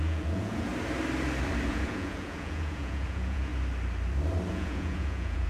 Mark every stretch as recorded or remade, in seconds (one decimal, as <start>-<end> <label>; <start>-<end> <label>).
0.0-0.7 remade; 0.7-1.7 recorded; 1.7-3.5 remade; 3.5-4.5 recorded; 4.5-5.5 remade